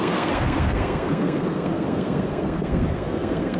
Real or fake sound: fake